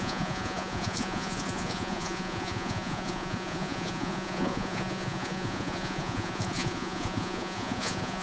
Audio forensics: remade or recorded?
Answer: remade